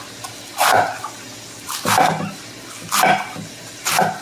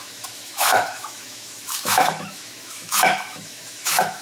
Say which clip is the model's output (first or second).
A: second